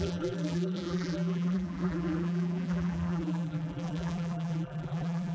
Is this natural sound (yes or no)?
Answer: no